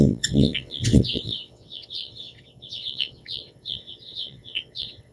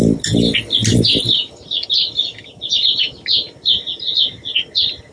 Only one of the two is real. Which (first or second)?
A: second